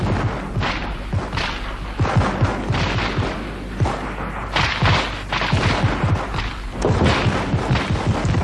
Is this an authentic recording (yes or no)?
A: yes